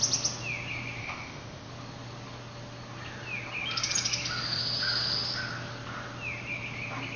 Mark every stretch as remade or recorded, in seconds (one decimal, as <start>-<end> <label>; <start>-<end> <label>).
0.0-1.0 recorded; 1.0-1.7 remade; 1.7-7.2 recorded